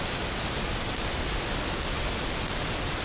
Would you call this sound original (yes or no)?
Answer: no